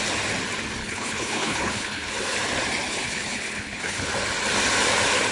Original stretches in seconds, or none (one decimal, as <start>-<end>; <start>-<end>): 0.0-0.8; 2.1-2.9; 4.1-5.3